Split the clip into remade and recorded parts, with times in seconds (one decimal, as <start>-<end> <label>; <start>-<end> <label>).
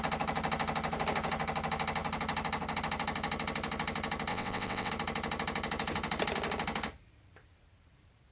0.0-4.3 recorded; 4.3-4.9 remade; 4.9-8.3 recorded